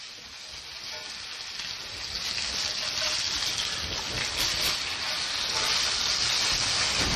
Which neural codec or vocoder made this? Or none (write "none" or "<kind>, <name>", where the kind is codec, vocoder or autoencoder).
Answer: none